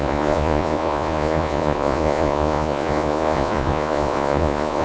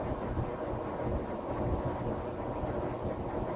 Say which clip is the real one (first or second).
second